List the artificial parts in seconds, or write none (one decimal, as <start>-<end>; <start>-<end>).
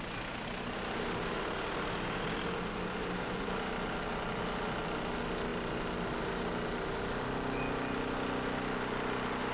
none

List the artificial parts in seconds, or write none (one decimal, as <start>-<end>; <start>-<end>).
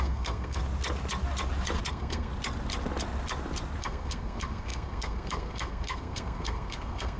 0.0-0.6; 1.9-2.3; 3.8-7.2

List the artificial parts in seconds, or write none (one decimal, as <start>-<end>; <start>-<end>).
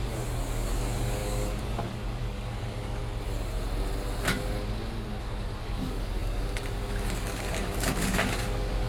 0.0-3.0; 5.2-8.9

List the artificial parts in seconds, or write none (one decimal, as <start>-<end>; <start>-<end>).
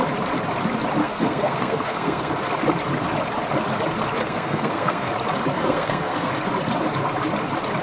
1.0-2.3; 4.2-5.1; 5.6-6.3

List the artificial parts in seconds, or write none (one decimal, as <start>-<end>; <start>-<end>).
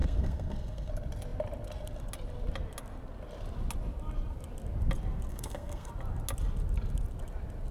0.0-0.9; 5.3-5.9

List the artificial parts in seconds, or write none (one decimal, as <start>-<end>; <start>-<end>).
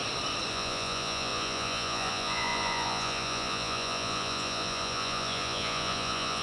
0.5-6.4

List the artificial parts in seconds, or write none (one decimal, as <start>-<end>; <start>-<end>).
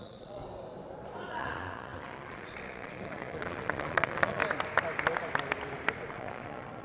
0.0-0.4; 1.3-4.4; 6.1-6.8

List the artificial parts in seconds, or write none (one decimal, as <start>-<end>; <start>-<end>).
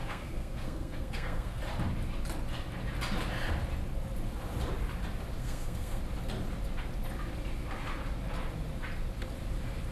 0.0-1.6; 5.4-6.0